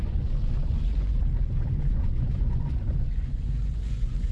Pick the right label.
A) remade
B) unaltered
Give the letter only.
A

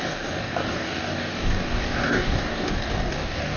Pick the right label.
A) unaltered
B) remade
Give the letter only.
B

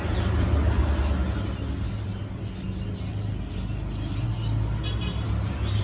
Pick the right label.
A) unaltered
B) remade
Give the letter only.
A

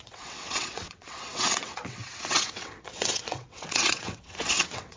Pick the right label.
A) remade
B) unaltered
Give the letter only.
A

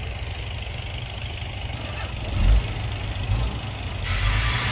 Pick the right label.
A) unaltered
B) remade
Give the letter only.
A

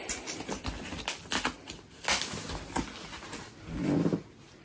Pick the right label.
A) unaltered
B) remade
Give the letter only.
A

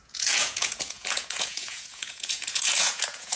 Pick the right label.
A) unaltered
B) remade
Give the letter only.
B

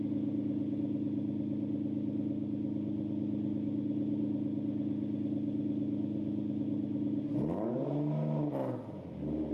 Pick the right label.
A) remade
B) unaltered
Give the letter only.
B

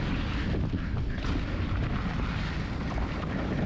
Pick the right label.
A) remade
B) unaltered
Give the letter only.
B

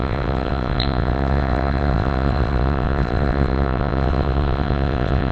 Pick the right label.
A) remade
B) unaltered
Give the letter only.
A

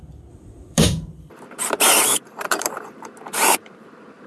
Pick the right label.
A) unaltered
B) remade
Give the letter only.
B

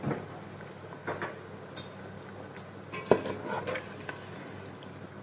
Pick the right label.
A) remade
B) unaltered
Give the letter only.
B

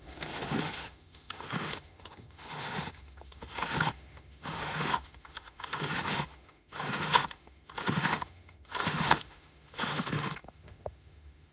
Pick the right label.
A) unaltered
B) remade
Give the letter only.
B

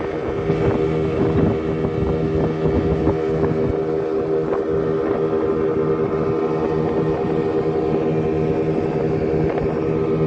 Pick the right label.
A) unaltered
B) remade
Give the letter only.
A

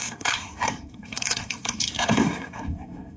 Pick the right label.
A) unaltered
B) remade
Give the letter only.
B